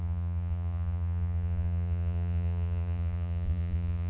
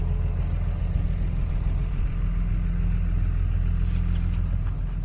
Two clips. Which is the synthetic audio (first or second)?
first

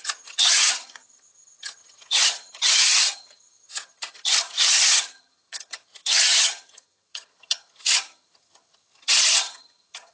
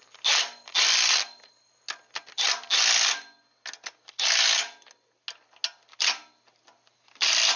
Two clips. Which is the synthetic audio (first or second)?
first